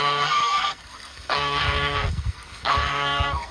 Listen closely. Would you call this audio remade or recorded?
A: remade